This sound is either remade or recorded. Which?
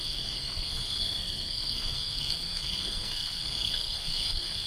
remade